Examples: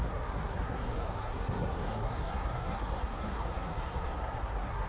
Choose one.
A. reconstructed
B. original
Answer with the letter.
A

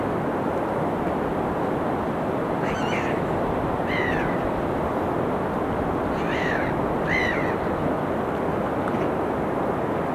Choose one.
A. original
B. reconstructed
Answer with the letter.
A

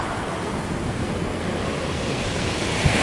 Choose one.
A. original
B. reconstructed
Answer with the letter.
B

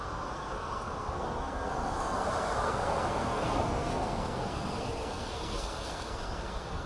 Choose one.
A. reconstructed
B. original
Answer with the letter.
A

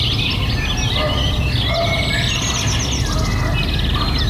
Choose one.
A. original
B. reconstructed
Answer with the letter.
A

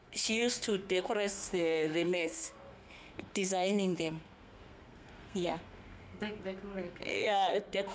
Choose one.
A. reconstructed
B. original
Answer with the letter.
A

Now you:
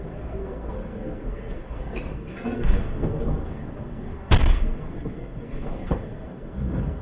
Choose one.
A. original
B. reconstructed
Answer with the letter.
B